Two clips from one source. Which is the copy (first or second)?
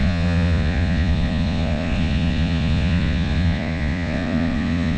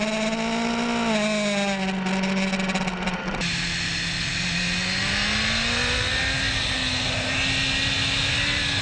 first